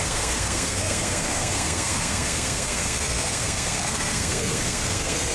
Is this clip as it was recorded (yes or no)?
no